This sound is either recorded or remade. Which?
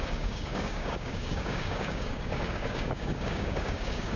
remade